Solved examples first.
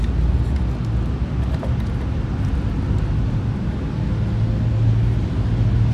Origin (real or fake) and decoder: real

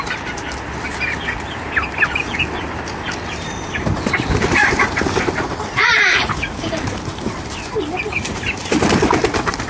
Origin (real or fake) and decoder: fake, vocoder, BigVGAN v2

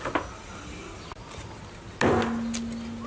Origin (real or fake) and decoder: real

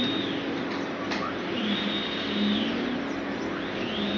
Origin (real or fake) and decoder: real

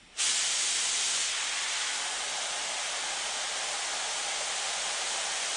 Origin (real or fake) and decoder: real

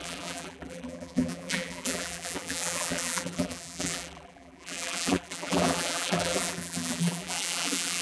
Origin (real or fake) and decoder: fake, vocoder, BigVGAN v2